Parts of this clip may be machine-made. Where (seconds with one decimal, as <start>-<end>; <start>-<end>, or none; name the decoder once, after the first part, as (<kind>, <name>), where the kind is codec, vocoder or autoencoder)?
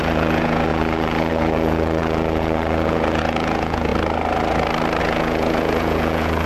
0.0-3.9 (vocoder, Vocos); 5.0-6.5